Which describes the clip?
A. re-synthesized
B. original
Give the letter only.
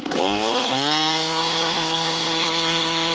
A